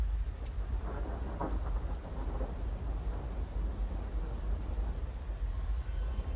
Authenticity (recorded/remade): recorded